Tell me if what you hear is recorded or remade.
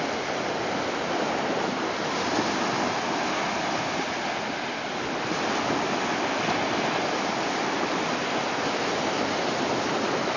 recorded